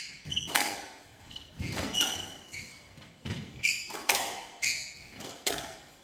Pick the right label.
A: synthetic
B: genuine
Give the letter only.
A